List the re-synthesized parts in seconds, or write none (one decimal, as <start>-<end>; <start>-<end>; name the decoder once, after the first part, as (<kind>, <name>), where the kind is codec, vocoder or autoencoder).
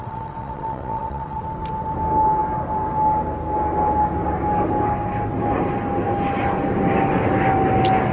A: 0.0-1.4 (vocoder, WaveNeXt)